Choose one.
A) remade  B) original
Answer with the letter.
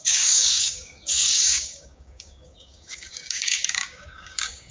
A